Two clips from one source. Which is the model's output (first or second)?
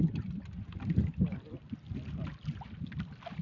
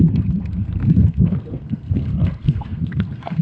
second